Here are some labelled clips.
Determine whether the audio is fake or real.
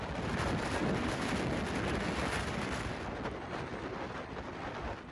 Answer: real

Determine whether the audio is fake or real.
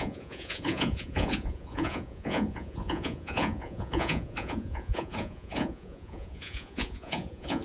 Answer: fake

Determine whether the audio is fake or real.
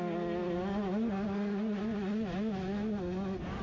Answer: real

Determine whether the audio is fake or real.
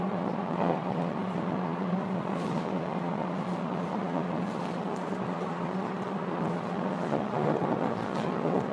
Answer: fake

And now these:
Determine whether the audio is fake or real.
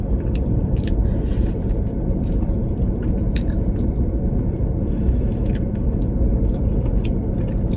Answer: fake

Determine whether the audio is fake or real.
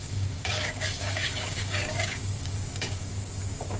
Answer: fake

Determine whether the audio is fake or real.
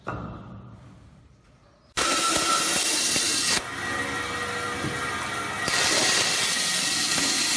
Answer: real